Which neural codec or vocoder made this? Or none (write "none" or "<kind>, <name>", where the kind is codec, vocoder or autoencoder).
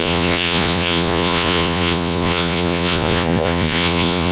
vocoder, Vocos